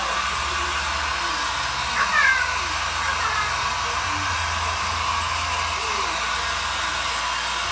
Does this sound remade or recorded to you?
recorded